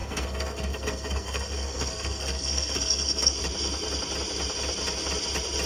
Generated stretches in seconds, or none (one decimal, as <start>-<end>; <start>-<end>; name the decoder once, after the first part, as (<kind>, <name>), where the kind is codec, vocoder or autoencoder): 0.0-3.4 (codec, SNAC)